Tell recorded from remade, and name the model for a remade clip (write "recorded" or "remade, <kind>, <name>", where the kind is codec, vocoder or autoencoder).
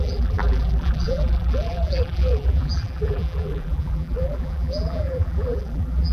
remade, vocoder, BigVGAN v2